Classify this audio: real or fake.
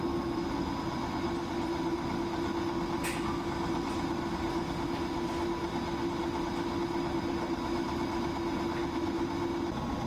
real